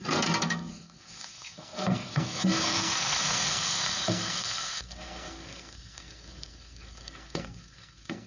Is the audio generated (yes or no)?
yes